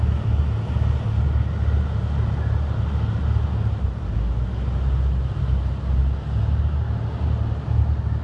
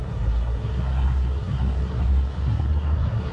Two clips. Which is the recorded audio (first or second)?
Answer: first